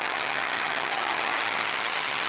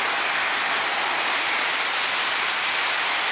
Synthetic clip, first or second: first